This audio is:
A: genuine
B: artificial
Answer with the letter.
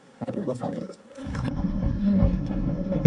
B